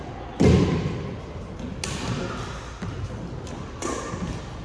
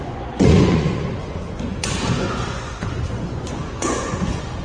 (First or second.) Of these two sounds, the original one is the first